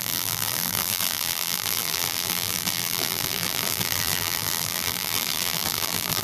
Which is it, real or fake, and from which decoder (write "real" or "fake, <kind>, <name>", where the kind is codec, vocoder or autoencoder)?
fake, vocoder, BigVGAN v2